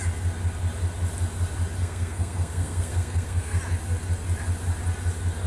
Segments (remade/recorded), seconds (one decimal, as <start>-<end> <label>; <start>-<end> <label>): 0.0-1.8 recorded; 1.8-3.6 remade; 3.6-5.5 recorded